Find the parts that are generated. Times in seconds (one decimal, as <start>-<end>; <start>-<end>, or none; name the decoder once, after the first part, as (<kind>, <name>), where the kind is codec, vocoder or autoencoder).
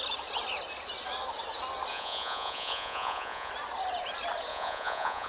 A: 1.9-3.5 (vocoder, Vocos); 4.5-5.3